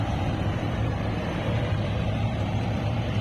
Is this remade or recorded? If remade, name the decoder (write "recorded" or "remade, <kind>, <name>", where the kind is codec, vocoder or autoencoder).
remade, vocoder, BigVGAN v2